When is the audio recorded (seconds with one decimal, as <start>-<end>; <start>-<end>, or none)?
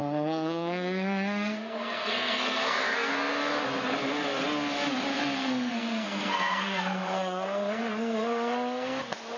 3.1-5.1; 9.0-9.4